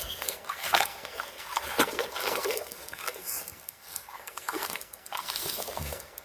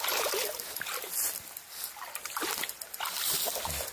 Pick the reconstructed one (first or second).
first